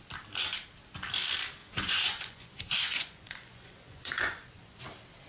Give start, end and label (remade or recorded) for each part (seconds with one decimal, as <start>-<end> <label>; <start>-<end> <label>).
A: 0.0-1.6 recorded; 1.6-4.8 remade; 4.8-5.3 recorded